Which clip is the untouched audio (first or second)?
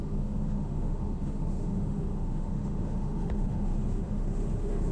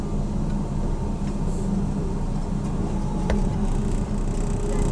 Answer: second